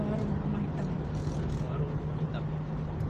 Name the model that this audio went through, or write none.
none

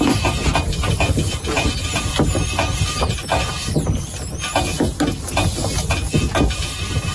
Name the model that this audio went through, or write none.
none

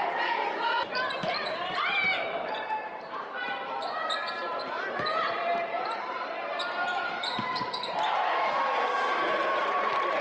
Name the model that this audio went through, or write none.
vocoder, BigVGAN v2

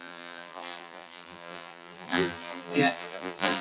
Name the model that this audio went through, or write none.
vocoder, BigVGAN v2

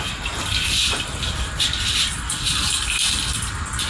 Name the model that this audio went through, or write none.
vocoder, BigVGAN v2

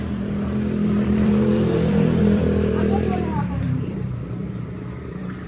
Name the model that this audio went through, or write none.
vocoder, BigVGAN v2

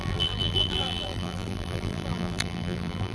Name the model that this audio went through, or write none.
vocoder, BigVGAN v2